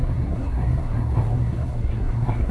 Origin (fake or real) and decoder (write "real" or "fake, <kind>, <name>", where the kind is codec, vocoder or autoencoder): fake, codec, SNAC